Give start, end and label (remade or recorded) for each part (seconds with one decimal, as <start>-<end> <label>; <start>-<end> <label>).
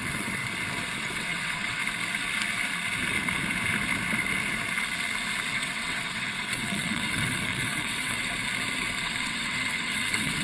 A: 0.0-0.4 remade; 0.4-1.0 recorded; 1.0-1.8 remade; 1.8-5.5 recorded; 5.5-8.2 remade; 8.2-9.0 recorded; 9.0-10.4 remade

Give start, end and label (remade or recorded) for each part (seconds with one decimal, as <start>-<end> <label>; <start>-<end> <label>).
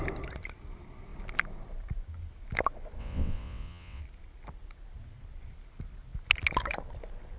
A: 0.0-3.0 recorded; 3.0-4.0 remade; 4.0-7.4 recorded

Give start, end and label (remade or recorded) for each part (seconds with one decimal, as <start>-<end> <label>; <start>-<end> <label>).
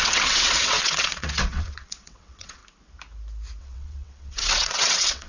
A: 0.0-2.6 remade; 2.6-3.6 recorded; 3.6-5.3 remade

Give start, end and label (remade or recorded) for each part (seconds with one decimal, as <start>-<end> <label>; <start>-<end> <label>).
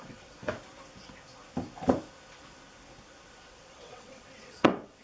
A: 0.0-0.4 remade; 0.4-3.4 recorded; 3.4-5.0 remade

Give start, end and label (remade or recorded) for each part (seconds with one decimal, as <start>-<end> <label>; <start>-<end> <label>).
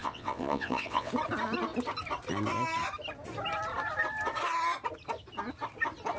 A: 0.0-1.1 remade; 1.1-6.2 recorded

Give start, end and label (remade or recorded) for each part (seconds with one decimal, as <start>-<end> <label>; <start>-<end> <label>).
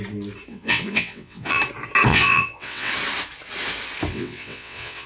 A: 0.0-0.5 recorded; 0.5-1.6 remade; 1.6-2.1 recorded; 2.1-2.9 remade; 2.9-4.1 recorded; 4.1-5.1 remade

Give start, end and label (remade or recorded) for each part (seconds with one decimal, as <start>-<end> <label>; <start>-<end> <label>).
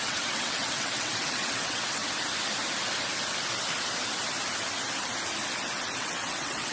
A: 0.0-2.0 remade; 2.0-6.0 recorded; 6.0-6.7 remade